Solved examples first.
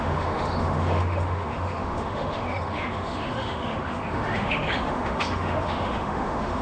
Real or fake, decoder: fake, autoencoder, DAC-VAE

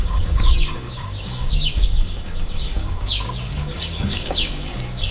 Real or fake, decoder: fake, codec, DAC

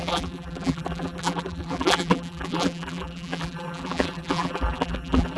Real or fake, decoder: fake, vocoder, BigVGAN v2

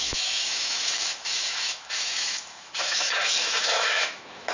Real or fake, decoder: fake, autoencoder, DAC-VAE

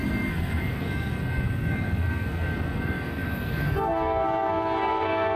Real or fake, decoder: fake, codec, SNAC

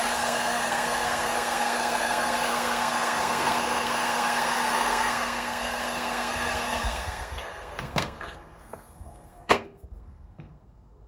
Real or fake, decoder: fake, codec, SNAC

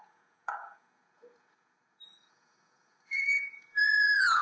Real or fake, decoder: fake, vocoder, Vocos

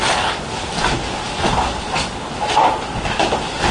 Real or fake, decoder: real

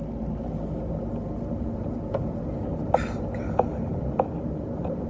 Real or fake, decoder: real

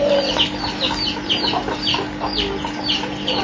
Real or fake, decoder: real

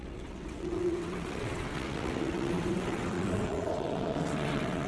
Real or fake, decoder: fake, vocoder, WaveNeXt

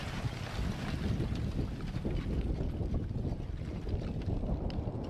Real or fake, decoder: real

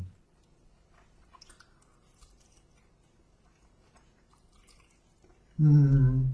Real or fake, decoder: real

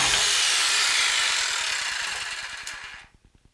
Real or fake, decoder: real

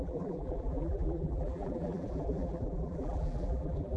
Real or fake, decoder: fake, vocoder, BigVGAN v2